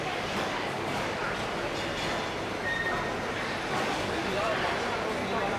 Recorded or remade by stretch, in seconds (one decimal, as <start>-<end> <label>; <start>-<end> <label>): 0.0-1.2 remade; 1.2-3.8 recorded; 3.8-4.2 remade; 4.2-5.6 recorded